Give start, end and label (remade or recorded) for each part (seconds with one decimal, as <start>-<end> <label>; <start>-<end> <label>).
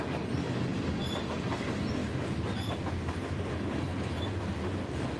0.0-2.0 recorded; 2.0-3.3 remade; 3.3-5.2 recorded